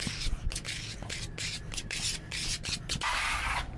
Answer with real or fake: real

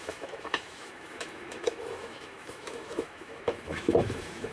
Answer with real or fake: fake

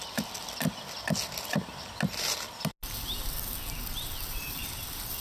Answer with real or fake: real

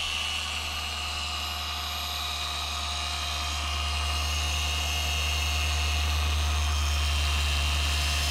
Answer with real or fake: real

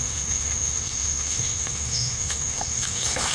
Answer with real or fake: fake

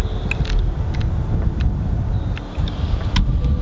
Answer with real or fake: real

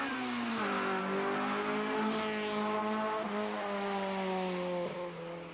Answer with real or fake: real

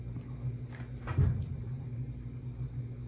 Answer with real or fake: real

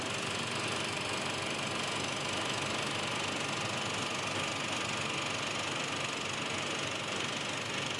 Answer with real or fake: real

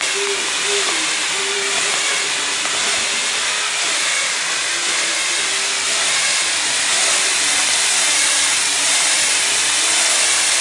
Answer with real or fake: real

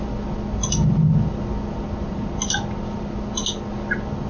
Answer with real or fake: real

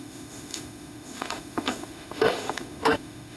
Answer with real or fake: fake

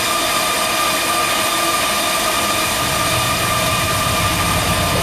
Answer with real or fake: real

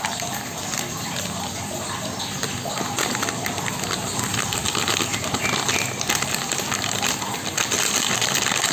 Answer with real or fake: real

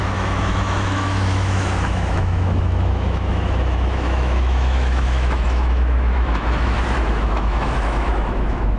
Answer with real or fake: fake